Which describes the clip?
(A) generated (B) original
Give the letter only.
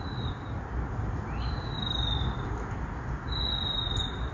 B